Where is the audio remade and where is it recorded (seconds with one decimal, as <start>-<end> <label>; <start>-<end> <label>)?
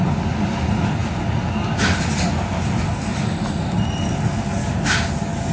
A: 0.0-4.6 recorded; 4.6-5.1 remade; 5.1-5.5 recorded